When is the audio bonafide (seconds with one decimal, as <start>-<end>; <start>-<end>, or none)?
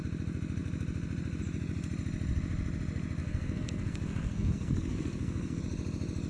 0.0-3.2; 5.6-6.3